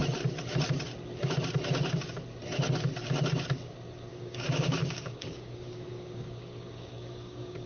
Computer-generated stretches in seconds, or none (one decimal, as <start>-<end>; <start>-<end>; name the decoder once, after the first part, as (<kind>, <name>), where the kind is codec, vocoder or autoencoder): 4.1-7.7 (codec, DAC)